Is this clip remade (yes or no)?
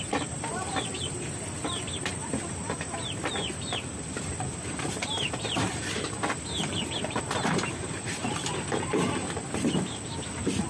yes